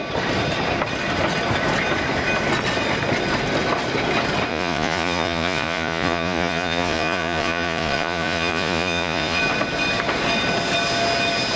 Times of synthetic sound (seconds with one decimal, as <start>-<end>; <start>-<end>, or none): 4.5-9.4